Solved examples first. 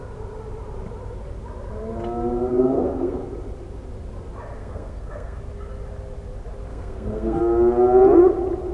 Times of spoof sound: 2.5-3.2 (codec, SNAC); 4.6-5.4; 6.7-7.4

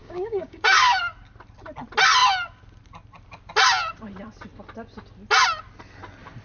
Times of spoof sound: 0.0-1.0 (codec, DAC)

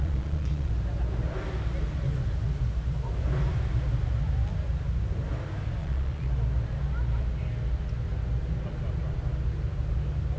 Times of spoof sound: 0.0-0.7 (vocoder, Vocos); 5.8-6.3

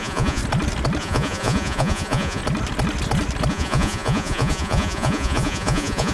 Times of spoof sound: 0.0-0.4 (vocoder, Vocos); 1.0-2.4; 3.5-6.1

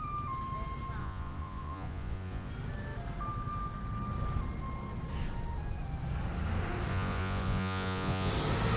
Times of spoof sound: 1.0-2.5 (vocoder, Vocos); 6.9-8.3

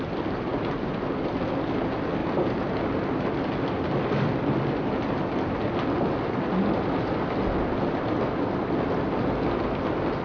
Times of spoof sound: none

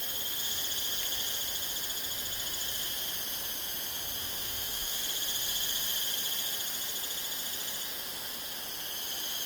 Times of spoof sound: 4.2-5.0 (autoencoder, DAC-VAE)